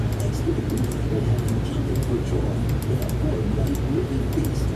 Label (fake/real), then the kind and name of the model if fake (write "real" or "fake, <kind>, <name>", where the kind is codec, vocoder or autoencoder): real